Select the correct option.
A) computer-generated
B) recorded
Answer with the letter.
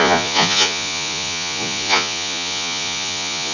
A